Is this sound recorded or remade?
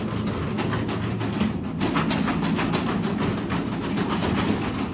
recorded